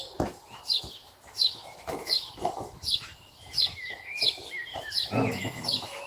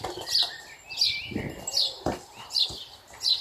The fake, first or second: first